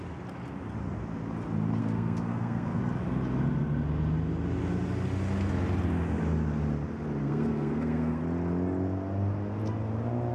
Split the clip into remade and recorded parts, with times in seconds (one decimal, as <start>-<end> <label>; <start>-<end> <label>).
0.0-1.8 recorded; 1.8-2.8 remade; 2.8-7.2 recorded; 7.2-8.2 remade; 8.2-10.3 recorded